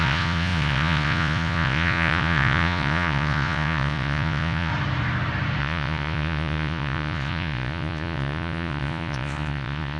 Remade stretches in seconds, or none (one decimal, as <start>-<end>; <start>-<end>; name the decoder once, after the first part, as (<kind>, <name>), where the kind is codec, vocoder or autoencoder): 0.0-4.7 (vocoder, Vocos); 5.6-10.0